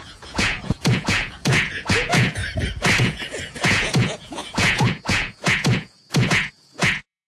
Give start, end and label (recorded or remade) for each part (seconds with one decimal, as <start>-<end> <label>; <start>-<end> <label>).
0.0-2.4 remade; 2.4-3.0 recorded; 3.0-7.3 remade